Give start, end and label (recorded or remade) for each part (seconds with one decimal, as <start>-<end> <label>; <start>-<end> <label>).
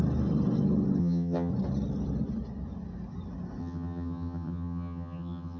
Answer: 0.0-1.0 recorded; 1.0-1.5 remade; 1.5-3.6 recorded; 3.6-5.6 remade